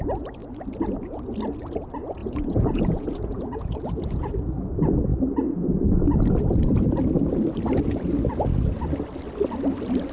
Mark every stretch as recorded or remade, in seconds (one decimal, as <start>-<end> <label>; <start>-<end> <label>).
0.0-2.2 recorded; 2.2-4.3 remade; 4.3-10.1 recorded